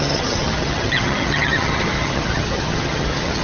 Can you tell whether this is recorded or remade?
remade